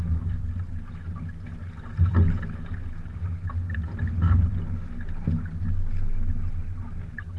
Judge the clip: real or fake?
real